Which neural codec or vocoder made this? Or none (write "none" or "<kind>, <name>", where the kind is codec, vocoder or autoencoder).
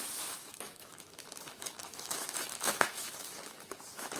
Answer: autoencoder, DAC-VAE